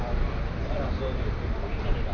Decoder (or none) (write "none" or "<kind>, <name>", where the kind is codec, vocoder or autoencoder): vocoder, BigVGAN v2